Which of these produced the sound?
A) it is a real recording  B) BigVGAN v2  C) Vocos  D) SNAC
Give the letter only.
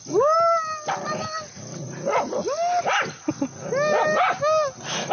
A